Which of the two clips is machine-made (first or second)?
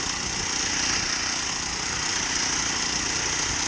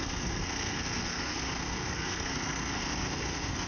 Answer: second